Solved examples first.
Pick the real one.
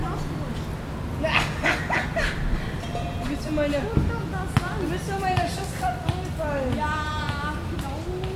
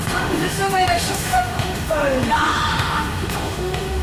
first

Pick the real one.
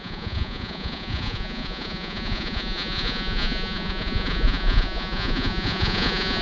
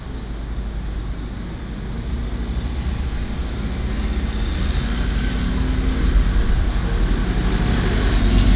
second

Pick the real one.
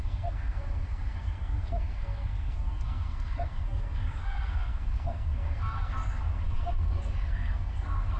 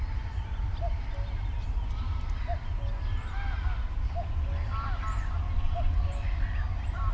second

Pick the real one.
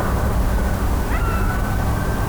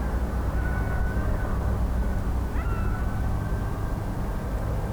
second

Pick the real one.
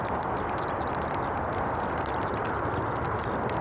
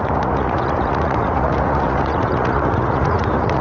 first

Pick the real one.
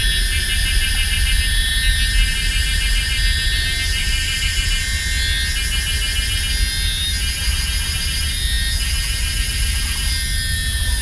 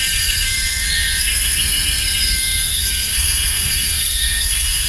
first